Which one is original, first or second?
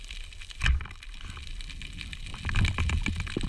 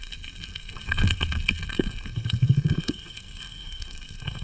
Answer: first